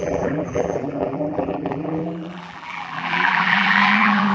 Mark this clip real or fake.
fake